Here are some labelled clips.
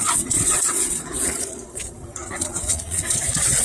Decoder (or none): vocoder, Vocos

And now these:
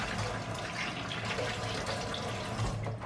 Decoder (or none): none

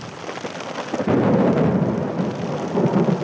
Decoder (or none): none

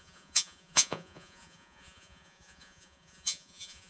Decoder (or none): vocoder, Vocos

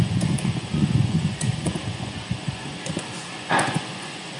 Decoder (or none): vocoder, Vocos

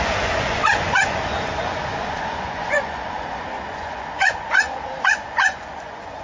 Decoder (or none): vocoder, Vocos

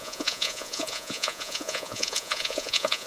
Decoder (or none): vocoder, Vocos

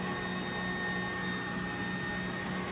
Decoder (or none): none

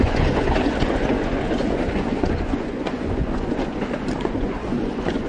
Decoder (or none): vocoder, Vocos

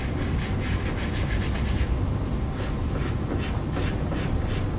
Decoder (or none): none